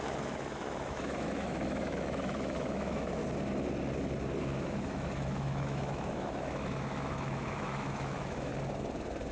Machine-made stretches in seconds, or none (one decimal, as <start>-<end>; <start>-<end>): 0.0-3.2; 4.4-8.5